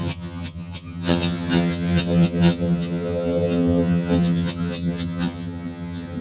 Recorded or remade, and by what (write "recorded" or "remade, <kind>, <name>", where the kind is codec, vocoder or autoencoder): remade, vocoder, HiFi-GAN